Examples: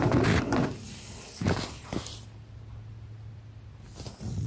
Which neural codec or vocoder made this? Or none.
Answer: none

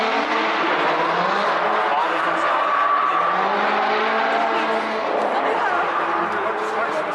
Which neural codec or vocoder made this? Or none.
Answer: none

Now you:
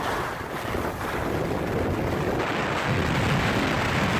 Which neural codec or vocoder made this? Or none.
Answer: none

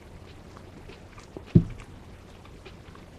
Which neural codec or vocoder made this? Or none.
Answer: none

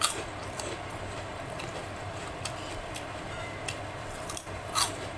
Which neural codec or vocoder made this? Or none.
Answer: vocoder, BigVGAN v2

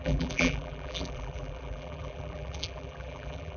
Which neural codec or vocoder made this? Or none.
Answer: vocoder, BigVGAN v2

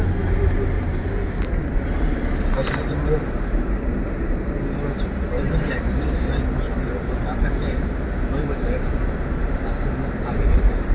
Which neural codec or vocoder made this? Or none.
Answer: vocoder, BigVGAN v2